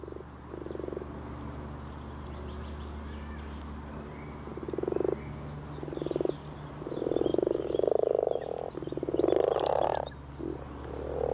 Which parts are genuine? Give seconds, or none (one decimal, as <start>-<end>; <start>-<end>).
7.3-8.7